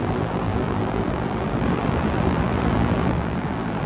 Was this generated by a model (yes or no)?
yes